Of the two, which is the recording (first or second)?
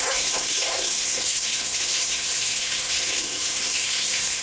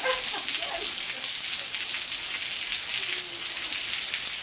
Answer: second